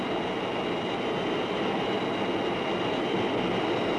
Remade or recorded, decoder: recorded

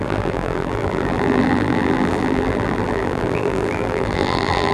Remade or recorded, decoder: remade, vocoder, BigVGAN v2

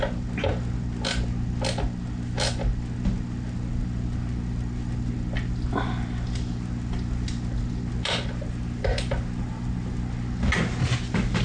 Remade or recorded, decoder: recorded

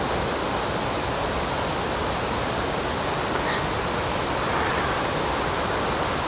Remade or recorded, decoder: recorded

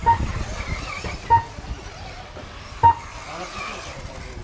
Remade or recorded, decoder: recorded